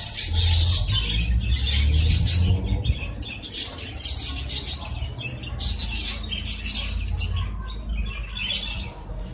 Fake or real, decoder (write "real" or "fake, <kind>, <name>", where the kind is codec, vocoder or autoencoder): real